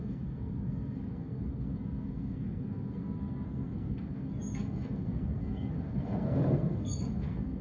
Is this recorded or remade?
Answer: remade